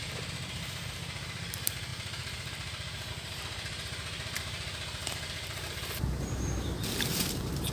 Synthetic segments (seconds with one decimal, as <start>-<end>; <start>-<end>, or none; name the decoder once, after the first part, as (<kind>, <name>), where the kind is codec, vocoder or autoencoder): 0.0-7.7 (vocoder, BigVGAN v2)